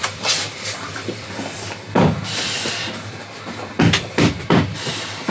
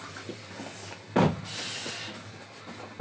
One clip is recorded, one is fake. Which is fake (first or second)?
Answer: first